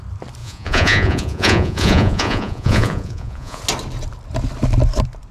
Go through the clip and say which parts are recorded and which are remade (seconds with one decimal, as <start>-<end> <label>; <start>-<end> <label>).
0.0-0.4 recorded; 0.4-3.6 remade; 3.6-5.3 recorded